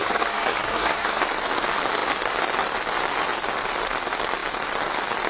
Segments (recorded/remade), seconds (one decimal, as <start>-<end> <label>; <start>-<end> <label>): 0.0-1.2 remade; 1.2-5.3 recorded